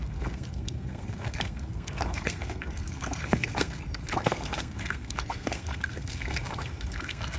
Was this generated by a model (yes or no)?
yes